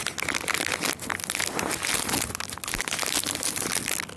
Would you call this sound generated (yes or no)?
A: no